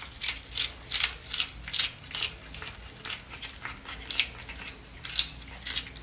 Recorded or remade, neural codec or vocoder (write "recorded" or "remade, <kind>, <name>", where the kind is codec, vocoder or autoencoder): recorded